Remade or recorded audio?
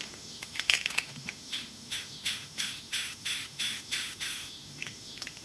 remade